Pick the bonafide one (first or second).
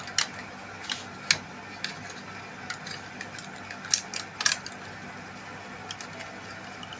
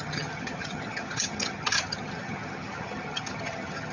first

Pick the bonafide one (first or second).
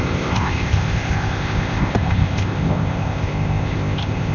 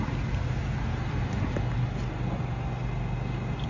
second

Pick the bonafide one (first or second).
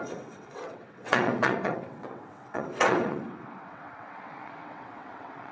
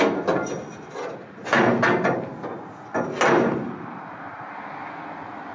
second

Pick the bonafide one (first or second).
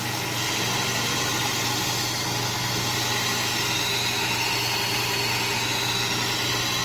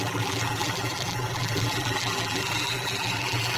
first